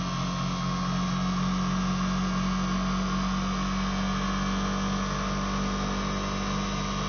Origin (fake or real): real